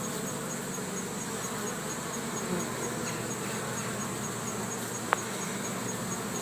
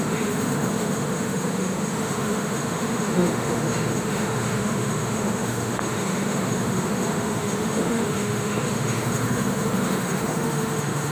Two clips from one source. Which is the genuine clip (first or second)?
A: first